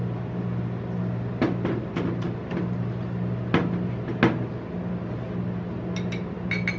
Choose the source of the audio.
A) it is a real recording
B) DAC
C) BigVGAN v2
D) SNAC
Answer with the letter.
A